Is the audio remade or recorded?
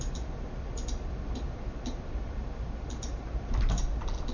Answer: remade